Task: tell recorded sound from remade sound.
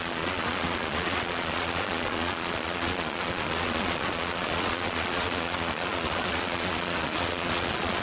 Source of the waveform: remade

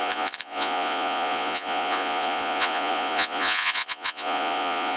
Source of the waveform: remade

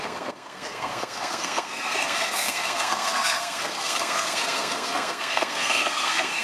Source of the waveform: remade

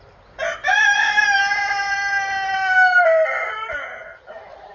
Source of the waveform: recorded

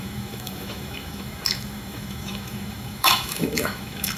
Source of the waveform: remade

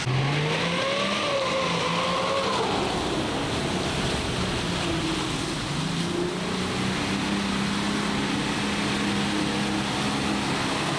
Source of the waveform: recorded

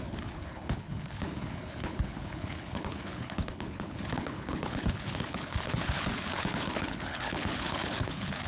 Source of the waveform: remade